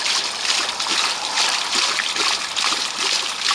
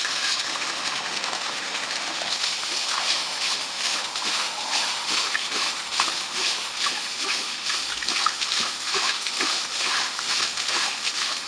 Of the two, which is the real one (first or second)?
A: first